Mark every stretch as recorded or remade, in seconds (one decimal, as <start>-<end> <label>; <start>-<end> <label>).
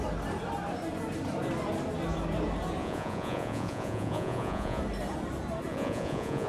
0.0-2.8 recorded; 2.8-4.8 remade; 4.8-5.7 recorded; 5.7-6.5 remade